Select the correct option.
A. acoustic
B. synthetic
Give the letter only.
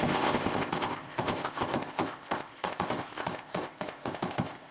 B